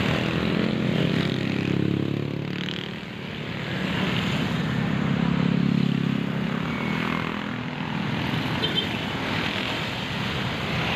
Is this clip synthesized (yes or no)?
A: no